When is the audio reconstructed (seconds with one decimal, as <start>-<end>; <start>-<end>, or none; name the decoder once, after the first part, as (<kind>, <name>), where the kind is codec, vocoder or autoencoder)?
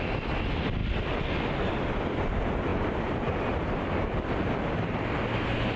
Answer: none